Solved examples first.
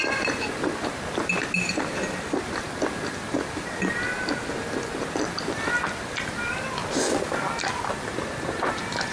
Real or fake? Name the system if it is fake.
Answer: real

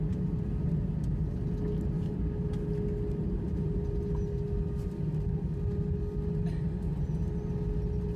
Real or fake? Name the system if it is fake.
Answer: real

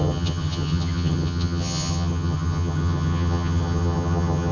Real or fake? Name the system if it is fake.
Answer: fake, vocoder, HiFi-GAN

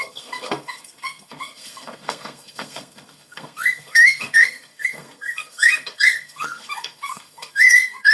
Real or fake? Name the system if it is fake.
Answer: fake, codec, SNAC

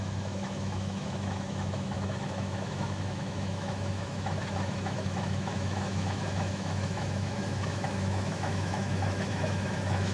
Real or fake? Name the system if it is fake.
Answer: fake, autoencoder, DAC-VAE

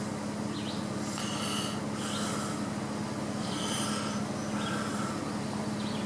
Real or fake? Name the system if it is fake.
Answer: real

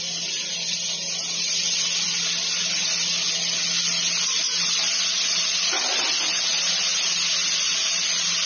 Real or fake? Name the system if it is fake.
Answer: real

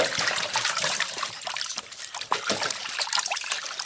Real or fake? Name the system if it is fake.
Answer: fake, vocoder, BigVGAN v2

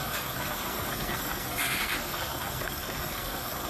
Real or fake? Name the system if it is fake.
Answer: fake, codec, SNAC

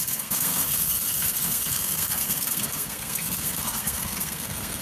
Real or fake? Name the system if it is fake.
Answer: fake, codec, SNAC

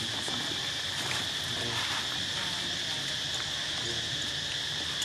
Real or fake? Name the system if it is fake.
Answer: real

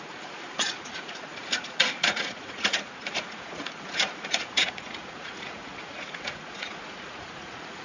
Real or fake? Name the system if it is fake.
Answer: fake, vocoder, Vocos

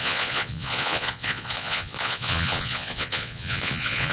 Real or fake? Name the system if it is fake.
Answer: fake, vocoder, Vocos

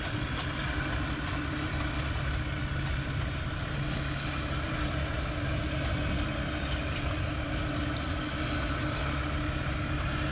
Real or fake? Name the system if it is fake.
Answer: real